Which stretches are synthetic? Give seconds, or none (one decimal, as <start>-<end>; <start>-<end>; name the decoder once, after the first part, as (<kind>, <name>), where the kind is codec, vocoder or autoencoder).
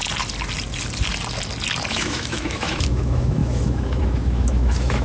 1.9-5.0 (autoencoder, DAC-VAE)